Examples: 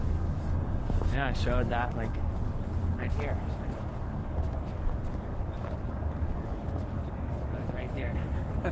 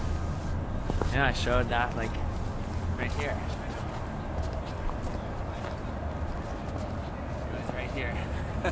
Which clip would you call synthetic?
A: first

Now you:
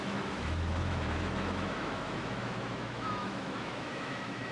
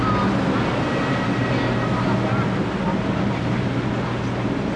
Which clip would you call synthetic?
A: first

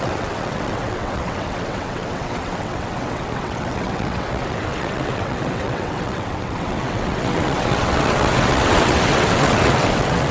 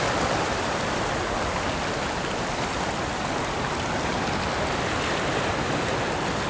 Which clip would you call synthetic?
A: first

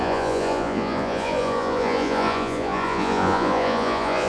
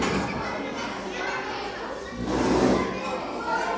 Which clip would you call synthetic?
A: first